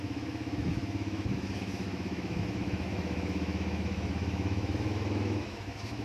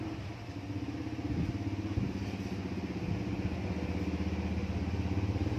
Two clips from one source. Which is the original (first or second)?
second